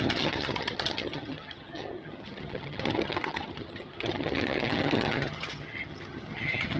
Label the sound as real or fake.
fake